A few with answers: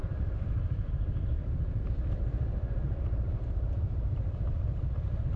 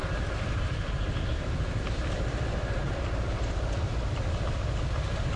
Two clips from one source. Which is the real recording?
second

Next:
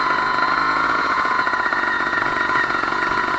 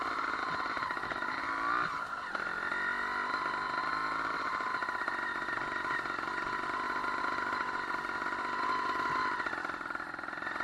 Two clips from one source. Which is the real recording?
second